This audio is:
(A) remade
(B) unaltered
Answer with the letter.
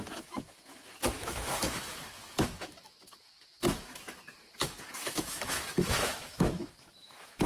A